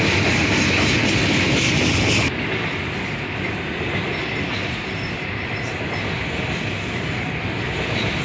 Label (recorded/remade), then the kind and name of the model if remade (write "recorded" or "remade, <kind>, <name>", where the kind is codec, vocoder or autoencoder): recorded